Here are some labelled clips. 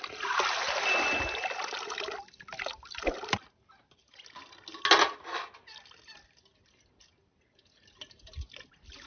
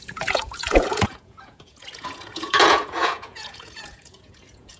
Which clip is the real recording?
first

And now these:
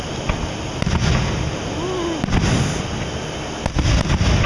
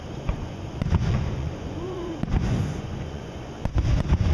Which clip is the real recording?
first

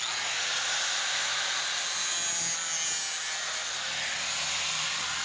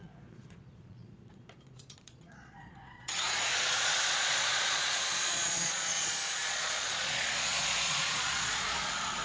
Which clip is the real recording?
first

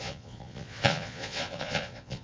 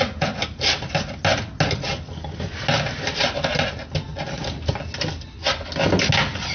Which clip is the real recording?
second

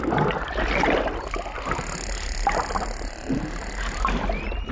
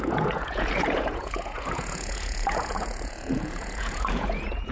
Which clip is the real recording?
first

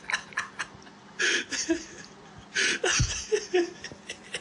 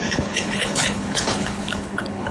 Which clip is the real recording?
first